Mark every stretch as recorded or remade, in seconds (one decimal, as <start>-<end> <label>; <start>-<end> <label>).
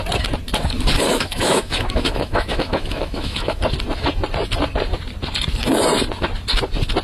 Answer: 0.0-1.1 recorded; 1.1-3.6 remade; 3.6-7.0 recorded